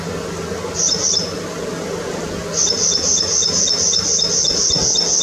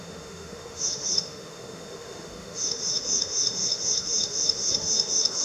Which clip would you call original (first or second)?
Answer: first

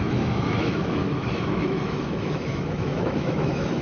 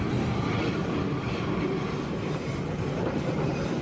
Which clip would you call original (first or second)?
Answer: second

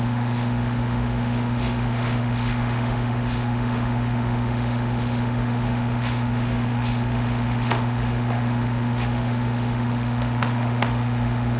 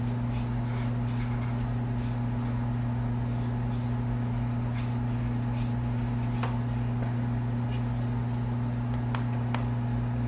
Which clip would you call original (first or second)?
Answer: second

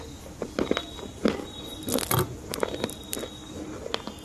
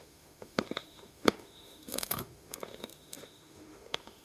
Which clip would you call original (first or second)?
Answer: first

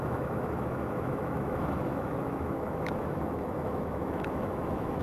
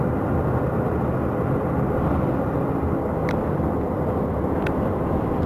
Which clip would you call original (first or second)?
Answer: second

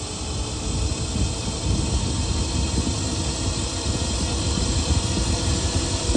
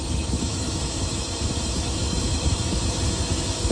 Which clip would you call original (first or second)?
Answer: first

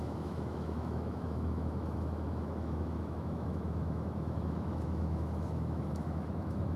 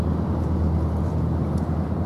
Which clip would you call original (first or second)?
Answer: second